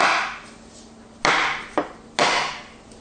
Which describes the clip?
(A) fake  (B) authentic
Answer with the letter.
B